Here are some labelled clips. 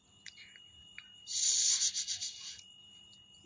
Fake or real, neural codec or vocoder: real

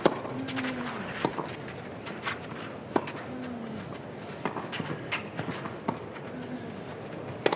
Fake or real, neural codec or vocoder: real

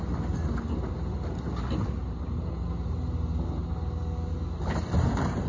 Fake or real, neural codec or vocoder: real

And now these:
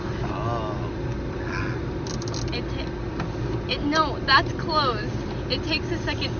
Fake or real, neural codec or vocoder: real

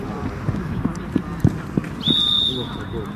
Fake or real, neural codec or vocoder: real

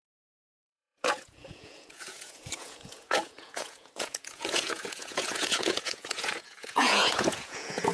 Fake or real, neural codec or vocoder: fake, vocoder, Vocos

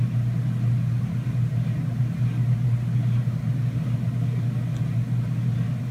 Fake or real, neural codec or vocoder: real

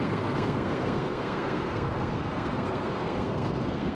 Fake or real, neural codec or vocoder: fake, codec, SNAC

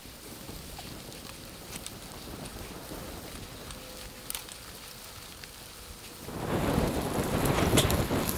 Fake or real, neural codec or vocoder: real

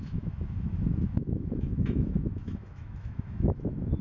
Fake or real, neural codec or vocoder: fake, autoencoder, DAC-VAE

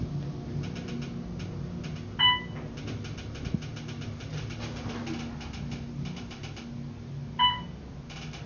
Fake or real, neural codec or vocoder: real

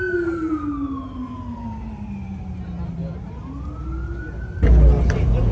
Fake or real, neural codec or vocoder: real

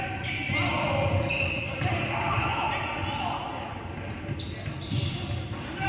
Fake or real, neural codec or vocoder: real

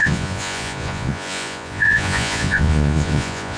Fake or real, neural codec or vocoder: fake, vocoder, Vocos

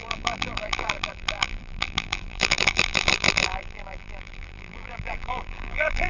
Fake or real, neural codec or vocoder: fake, vocoder, BigVGAN v2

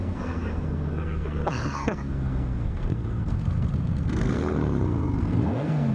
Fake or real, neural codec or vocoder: fake, codec, SNAC